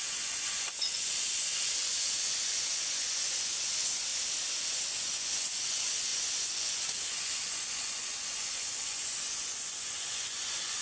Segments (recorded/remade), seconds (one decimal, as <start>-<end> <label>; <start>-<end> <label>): 0.0-4.1 remade; 4.1-4.7 recorded; 4.7-10.8 remade